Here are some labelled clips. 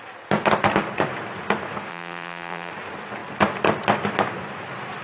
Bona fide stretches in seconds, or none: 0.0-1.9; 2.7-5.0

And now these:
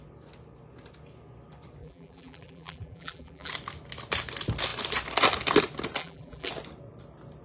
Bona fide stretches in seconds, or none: 0.0-1.8; 3.5-6.0; 6.5-7.4

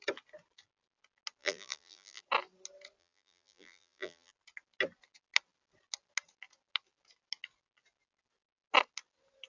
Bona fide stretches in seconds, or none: 0.0-1.4; 2.2-3.0; 4.3-9.5

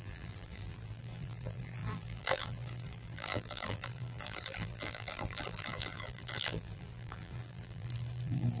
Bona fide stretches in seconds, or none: none

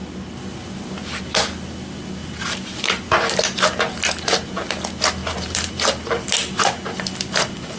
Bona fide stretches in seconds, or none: 0.0-2.2; 3.4-5.2